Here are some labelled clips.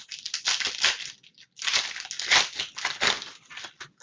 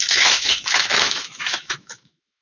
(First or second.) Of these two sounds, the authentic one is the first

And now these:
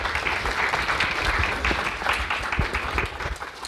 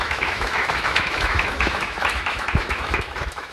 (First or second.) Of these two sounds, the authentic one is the first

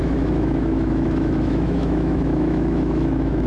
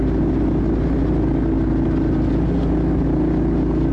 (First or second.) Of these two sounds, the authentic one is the second